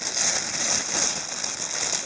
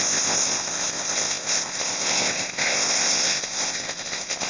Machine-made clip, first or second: second